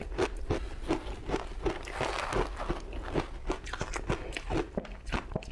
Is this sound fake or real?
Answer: real